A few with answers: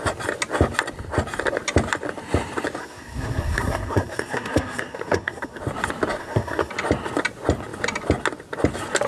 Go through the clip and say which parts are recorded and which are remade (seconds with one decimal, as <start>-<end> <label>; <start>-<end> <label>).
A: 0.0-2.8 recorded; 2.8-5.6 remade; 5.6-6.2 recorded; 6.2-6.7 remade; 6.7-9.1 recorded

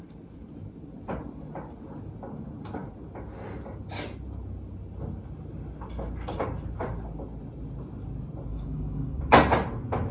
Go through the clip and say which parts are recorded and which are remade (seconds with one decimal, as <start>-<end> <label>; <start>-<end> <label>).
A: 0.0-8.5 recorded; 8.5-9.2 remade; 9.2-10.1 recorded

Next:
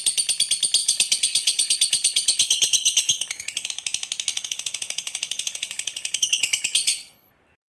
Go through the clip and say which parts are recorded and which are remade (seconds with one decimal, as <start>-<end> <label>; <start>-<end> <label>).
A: 0.0-0.8 recorded; 0.8-3.7 remade; 3.7-4.3 recorded; 4.3-7.3 remade; 7.3-7.7 recorded